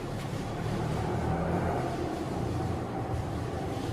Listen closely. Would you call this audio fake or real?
fake